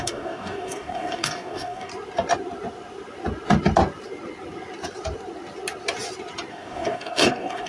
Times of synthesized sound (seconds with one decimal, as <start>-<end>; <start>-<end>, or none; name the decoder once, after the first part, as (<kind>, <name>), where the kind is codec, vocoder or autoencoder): 0.0-1.9 (codec, DAC); 6.5-7.7